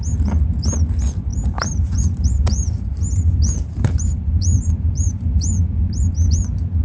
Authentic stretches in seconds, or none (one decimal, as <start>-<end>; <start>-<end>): 0.0-1.3; 5.4-6.8